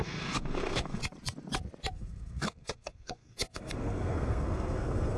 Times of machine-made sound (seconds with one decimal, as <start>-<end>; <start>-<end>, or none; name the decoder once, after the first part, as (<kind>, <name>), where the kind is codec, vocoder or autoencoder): 0.0-1.0 (codec, SNAC); 1.9-5.2